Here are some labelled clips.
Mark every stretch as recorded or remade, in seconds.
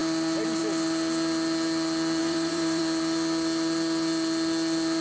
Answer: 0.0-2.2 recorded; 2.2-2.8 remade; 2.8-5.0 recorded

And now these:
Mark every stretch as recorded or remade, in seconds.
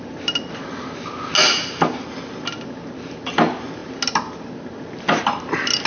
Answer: 0.0-5.9 recorded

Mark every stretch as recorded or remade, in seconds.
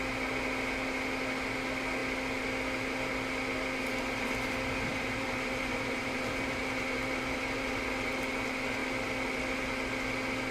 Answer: 0.0-4.9 recorded; 4.9-7.8 remade; 7.8-10.5 recorded